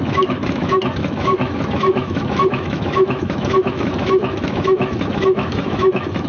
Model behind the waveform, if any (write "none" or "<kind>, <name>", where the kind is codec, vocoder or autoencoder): autoencoder, DAC-VAE